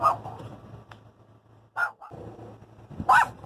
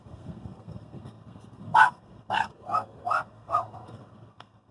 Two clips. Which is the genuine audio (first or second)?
first